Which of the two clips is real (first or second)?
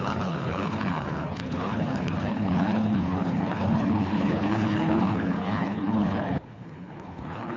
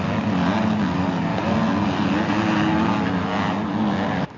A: second